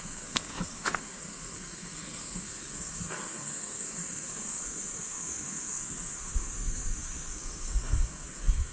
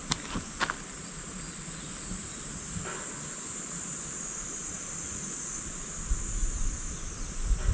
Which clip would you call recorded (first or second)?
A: second